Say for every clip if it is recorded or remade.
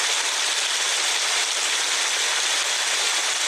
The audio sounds recorded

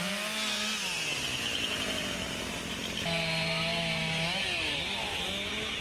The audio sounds recorded